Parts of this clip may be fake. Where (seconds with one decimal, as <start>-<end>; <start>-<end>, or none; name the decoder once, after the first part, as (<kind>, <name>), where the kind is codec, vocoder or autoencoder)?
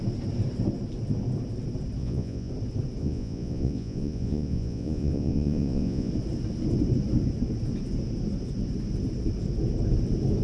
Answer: 2.0-2.5 (vocoder, Vocos); 3.0-6.1